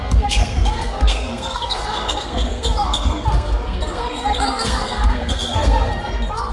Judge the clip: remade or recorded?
remade